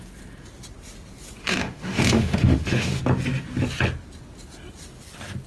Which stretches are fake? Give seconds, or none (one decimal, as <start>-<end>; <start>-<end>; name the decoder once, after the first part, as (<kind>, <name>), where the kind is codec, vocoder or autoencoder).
1.4-3.0 (autoencoder, DAC-VAE)